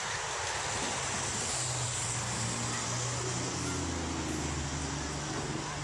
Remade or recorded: recorded